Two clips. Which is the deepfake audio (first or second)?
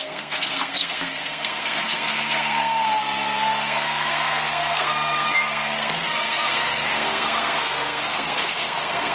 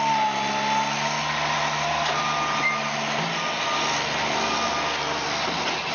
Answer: first